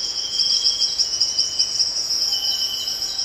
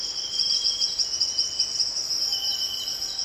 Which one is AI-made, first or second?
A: first